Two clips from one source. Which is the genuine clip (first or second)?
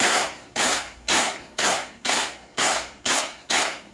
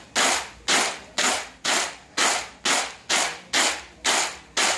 second